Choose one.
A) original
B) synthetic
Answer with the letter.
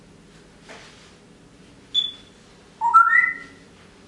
A